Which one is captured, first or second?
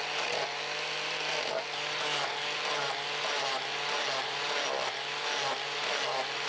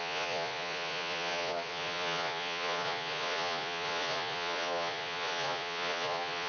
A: first